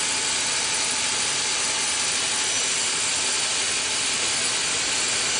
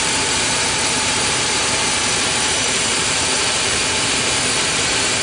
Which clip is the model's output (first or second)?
second